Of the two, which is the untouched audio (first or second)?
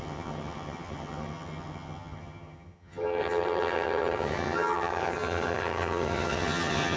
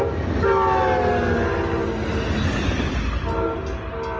second